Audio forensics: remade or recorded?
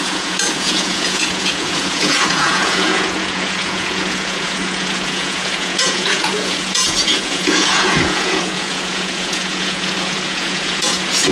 remade